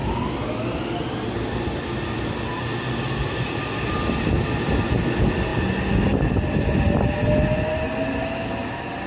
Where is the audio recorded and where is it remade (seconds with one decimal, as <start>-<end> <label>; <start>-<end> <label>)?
0.0-9.1 recorded